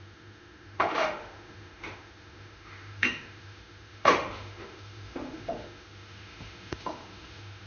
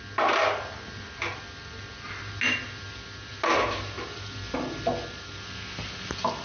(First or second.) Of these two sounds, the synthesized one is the first